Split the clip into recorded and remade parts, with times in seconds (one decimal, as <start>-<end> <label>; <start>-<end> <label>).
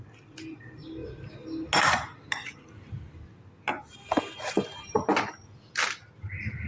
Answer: 0.0-6.7 recorded